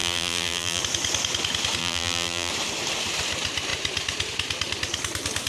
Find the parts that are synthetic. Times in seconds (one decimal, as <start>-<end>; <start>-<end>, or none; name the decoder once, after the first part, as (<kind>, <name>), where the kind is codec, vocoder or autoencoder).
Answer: 0.0-0.8 (vocoder, BigVGAN v2); 1.8-2.5